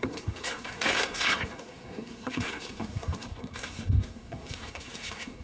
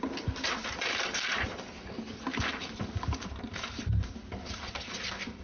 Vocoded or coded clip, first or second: first